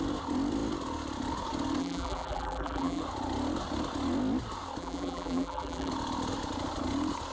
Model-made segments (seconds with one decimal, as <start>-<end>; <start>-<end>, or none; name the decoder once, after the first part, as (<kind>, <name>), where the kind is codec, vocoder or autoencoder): 1.8-3.0 (vocoder, BigVGAN v2); 4.8-5.9